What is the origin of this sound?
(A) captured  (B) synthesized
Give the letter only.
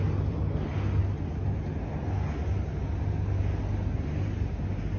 A